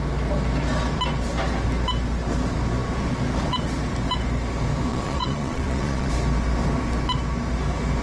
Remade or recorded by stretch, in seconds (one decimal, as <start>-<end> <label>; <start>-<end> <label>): 0.0-4.9 recorded; 4.9-6.1 remade; 6.1-8.0 recorded